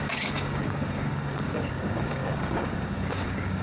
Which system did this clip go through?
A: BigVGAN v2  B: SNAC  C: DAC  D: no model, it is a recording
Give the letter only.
C